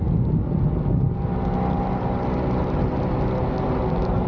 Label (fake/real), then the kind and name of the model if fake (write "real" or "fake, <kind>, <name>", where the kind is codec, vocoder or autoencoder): real